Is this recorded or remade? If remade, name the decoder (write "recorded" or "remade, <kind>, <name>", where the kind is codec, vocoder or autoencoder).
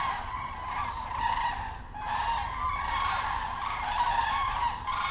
remade, vocoder, BigVGAN v2